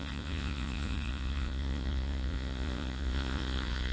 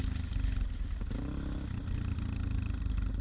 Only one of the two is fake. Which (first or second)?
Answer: first